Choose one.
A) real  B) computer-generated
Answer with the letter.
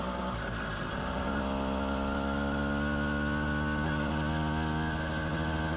A